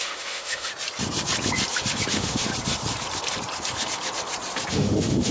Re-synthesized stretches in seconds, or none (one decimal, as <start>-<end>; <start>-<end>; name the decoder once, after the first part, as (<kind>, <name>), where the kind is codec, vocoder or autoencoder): 0.0-0.7 (autoencoder, DAC-VAE); 2.1-2.5; 4.7-5.3